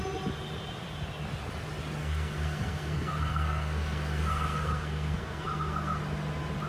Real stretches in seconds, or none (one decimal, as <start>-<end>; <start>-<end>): 0.0-2.0; 6.0-6.7